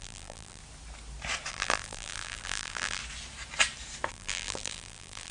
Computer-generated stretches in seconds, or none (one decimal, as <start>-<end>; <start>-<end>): 0.0-0.6; 1.5-3.0; 4.1-5.3